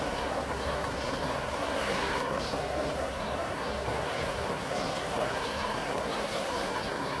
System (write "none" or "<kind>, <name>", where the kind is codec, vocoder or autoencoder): codec, SNAC